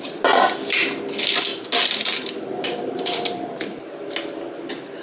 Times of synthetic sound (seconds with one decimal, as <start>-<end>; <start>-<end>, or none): none